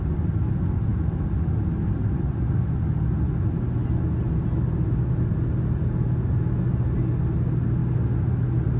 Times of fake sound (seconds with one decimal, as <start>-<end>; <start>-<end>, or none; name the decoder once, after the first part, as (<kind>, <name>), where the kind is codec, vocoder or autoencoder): none